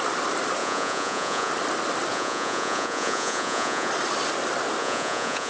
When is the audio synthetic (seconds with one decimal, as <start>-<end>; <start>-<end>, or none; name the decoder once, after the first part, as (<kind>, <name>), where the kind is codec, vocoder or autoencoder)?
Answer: 0.6-1.5 (vocoder, Vocos); 2.1-3.9; 4.8-5.5